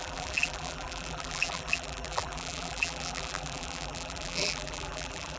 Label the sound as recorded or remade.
remade